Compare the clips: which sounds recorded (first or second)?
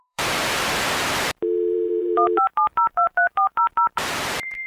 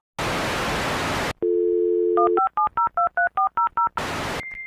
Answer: second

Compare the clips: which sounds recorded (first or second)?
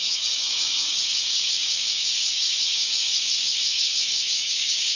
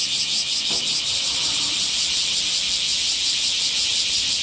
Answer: second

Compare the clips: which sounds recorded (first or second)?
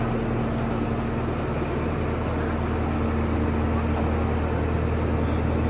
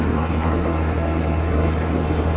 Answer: first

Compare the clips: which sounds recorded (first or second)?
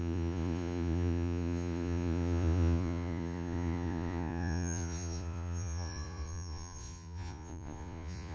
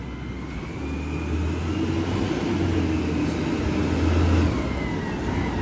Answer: second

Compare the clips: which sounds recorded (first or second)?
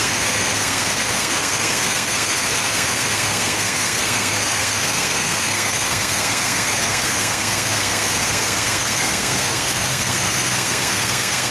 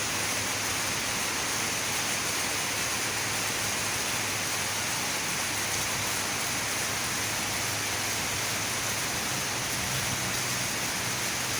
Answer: second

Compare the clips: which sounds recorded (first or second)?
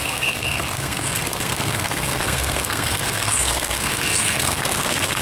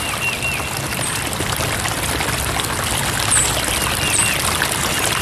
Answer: second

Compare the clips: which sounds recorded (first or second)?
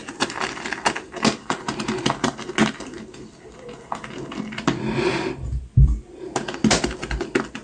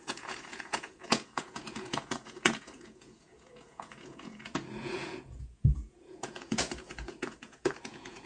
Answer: first